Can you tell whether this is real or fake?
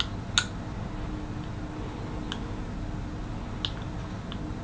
real